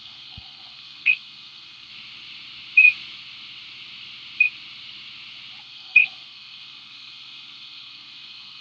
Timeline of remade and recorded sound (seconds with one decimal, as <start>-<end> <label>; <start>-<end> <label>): 0.0-1.9 remade; 1.9-5.6 recorded; 5.6-8.6 remade